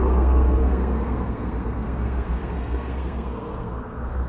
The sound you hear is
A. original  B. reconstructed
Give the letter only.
B